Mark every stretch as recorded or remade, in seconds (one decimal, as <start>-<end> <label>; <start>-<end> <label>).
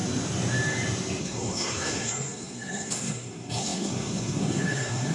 0.0-1.2 recorded; 1.2-5.1 remade